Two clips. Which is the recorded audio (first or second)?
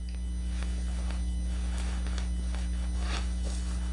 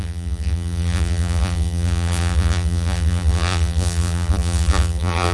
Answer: first